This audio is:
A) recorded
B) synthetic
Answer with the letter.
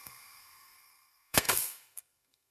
B